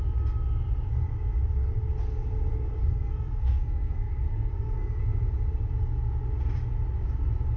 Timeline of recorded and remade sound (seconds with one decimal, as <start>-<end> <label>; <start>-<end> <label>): 0.0-2.8 recorded; 2.8-5.0 remade; 5.0-7.6 recorded